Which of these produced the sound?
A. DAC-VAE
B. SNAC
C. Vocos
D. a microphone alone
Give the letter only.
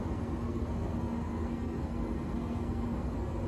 B